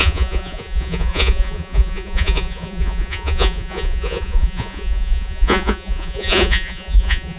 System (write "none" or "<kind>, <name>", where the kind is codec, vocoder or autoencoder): vocoder, Vocos